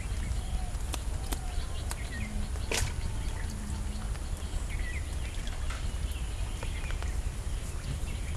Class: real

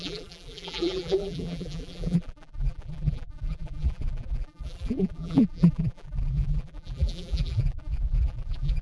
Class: fake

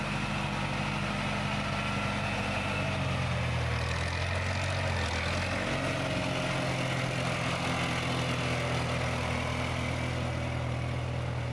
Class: real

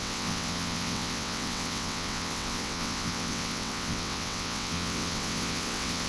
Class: fake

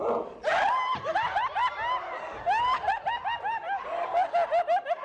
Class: real